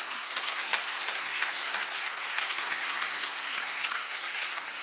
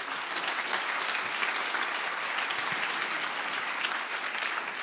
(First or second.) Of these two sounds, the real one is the second